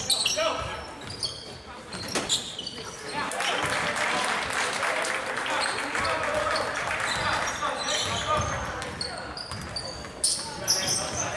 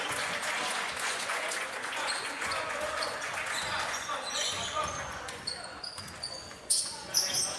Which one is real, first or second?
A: first